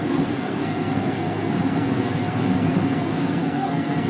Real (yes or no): no